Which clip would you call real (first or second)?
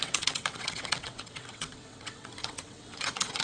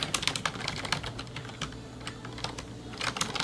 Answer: second